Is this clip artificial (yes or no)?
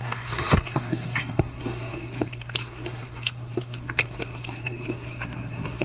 yes